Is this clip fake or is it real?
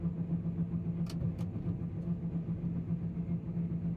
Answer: real